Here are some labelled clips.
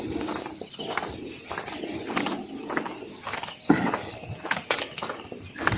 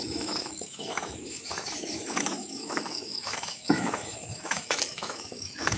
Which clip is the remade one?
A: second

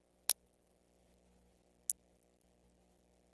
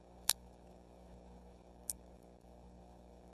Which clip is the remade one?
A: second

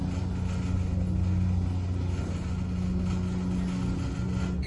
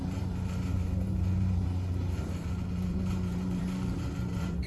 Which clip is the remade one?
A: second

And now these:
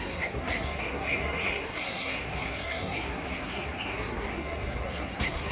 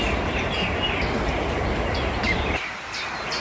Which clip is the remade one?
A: first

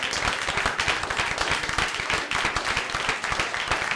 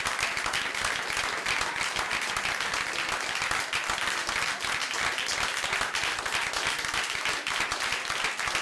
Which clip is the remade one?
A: first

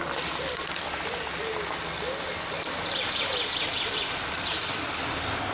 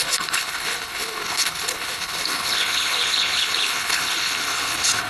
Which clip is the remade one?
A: second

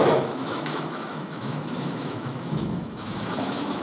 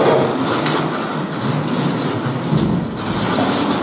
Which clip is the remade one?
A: first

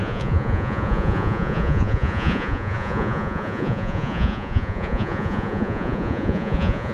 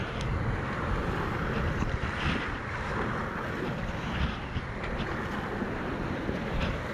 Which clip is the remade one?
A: first